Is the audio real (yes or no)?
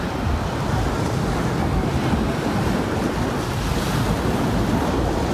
yes